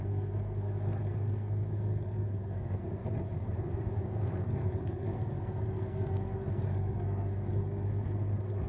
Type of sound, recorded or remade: remade